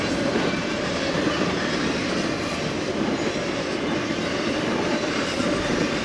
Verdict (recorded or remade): remade